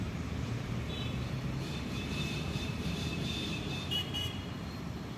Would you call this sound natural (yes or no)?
no